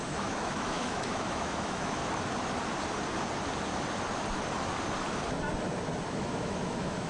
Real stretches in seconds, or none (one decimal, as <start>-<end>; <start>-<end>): 2.0-6.1